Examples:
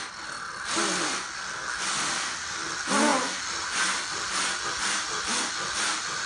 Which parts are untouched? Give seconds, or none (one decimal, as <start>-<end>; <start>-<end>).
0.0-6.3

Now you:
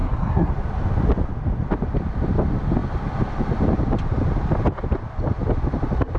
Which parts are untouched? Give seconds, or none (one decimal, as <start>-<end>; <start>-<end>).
0.5-6.2

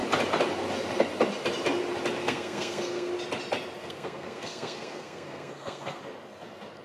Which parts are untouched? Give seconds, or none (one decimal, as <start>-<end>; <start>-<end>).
0.0-2.2; 3.1-3.8; 6.0-6.8

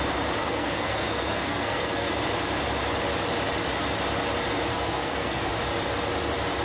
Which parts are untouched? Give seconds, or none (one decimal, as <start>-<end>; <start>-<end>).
0.0-0.4; 2.1-4.7; 5.5-6.6